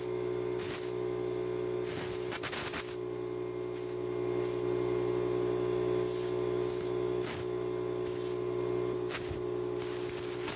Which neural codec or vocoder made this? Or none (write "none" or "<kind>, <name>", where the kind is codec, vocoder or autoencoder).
none